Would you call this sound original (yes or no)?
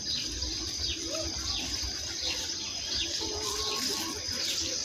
yes